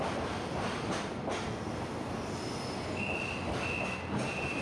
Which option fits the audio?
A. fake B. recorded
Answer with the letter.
B